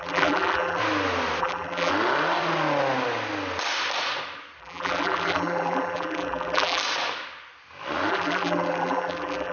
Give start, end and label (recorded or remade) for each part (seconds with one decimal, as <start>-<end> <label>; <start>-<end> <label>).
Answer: 0.0-0.8 remade; 0.8-1.4 recorded; 1.4-1.9 remade; 1.9-4.6 recorded; 4.6-6.8 remade; 6.8-8.1 recorded; 8.1-9.5 remade